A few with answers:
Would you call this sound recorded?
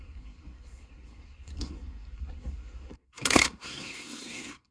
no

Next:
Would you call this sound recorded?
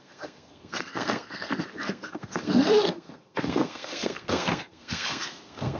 no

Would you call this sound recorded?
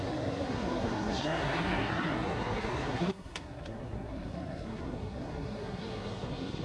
no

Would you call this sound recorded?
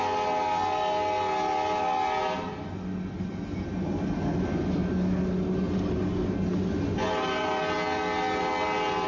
yes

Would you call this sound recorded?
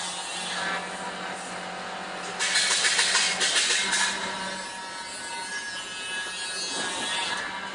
yes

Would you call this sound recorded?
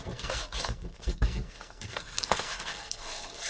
no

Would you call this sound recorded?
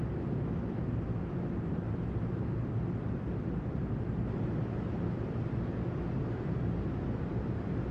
yes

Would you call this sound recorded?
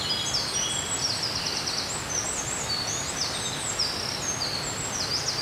yes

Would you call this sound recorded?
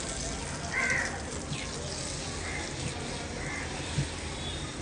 yes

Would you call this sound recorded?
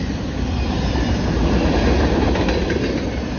yes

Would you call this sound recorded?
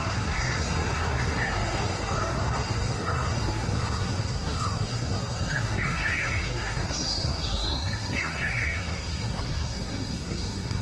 no